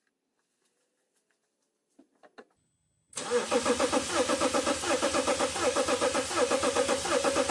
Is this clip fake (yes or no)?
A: no